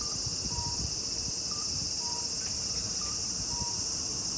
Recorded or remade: remade